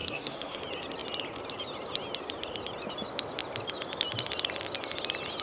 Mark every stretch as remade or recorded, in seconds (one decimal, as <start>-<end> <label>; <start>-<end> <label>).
0.0-0.6 remade; 0.6-5.4 recorded